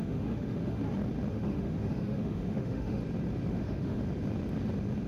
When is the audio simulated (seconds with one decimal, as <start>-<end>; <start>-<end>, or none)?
0.0-0.8; 1.3-3.0; 3.5-4.0